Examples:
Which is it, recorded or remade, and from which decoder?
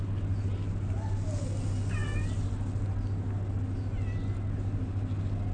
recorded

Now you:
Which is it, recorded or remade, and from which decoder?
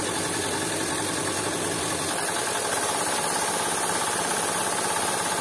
recorded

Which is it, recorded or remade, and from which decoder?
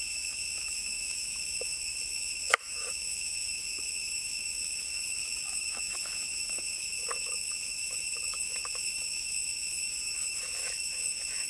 remade, autoencoder, DAC-VAE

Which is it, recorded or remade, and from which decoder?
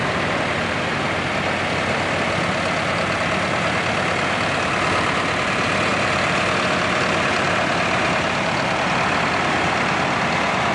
recorded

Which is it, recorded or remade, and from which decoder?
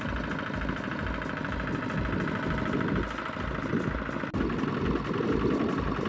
recorded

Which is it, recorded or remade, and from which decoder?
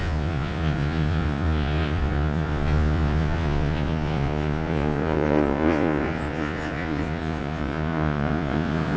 remade, vocoder, Vocos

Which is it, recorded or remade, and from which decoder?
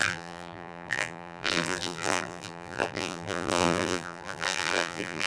remade, vocoder, BigVGAN v2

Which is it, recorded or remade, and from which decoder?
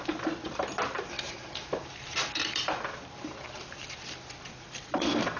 remade, vocoder, BigVGAN v2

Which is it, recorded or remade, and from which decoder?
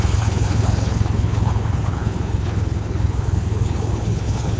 remade, codec, HILCodec